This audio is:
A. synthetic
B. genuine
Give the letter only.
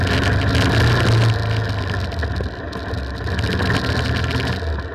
B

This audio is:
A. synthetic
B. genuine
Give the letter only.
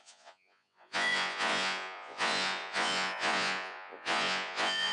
A